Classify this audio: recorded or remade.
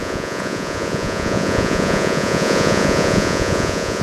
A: remade